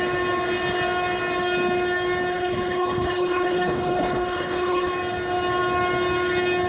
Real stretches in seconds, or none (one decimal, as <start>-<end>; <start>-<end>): 0.0-2.3; 4.9-6.7